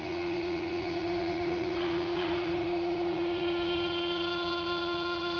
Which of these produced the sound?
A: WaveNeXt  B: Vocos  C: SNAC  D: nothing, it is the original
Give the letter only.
B